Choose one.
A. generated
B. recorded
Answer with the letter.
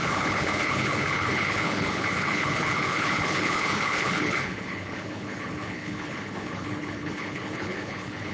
A